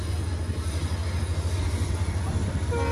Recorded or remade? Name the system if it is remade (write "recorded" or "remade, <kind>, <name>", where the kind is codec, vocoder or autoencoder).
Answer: recorded